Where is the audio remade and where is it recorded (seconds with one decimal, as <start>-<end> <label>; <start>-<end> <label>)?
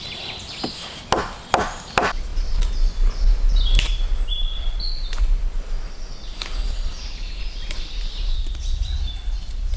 0.0-9.8 recorded